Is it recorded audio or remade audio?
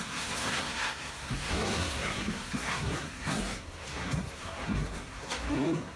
remade